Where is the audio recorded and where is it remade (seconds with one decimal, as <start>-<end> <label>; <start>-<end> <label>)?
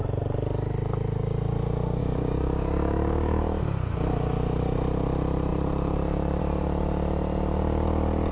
0.0-2.0 recorded; 2.0-3.4 remade; 3.4-8.3 recorded